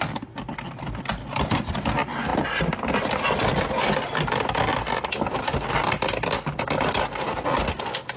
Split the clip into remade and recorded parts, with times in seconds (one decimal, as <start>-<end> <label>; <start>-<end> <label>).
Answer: 0.0-8.2 recorded